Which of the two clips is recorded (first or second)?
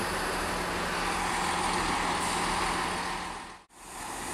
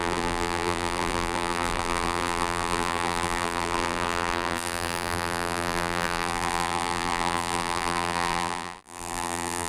first